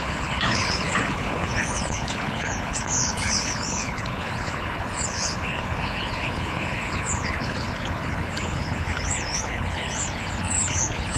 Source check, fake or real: fake